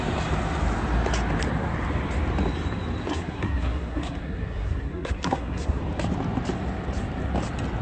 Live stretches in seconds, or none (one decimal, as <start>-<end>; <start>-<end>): 0.0-3.1; 5.8-7.8